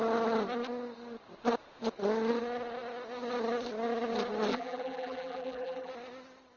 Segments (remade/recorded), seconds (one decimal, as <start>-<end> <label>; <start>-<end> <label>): 0.0-4.5 recorded; 4.5-5.9 remade; 5.9-6.6 recorded